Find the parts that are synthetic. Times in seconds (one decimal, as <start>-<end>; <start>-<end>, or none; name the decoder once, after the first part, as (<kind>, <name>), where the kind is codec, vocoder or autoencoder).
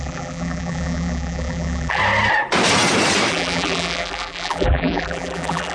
0.0-2.0 (vocoder, BigVGAN v2); 3.3-5.7